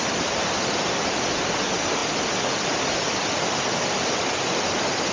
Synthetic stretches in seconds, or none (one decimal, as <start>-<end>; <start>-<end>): none